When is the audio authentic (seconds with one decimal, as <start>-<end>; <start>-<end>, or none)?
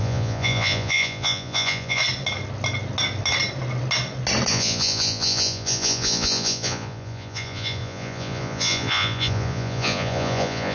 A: 2.0-4.5